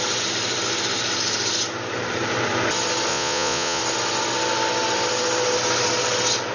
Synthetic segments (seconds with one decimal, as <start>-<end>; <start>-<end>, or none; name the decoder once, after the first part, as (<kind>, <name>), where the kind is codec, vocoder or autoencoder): 3.1-3.8 (vocoder, Vocos)